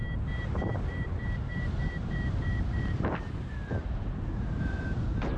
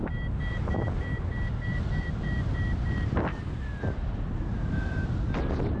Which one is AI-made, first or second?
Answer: first